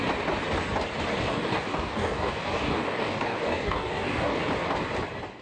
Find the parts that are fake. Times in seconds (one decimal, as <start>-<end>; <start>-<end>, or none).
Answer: 1.2-4.4